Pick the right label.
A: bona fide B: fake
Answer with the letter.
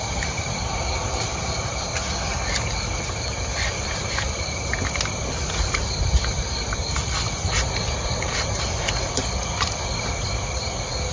A